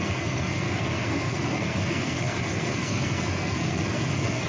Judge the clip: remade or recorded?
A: remade